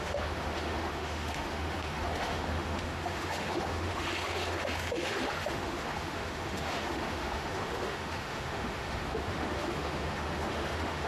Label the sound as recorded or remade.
remade